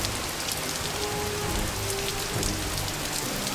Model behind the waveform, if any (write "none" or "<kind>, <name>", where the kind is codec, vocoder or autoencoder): none